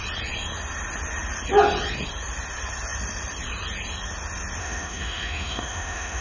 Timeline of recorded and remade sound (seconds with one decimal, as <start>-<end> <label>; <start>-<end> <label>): 0.0-4.6 recorded; 4.6-6.2 remade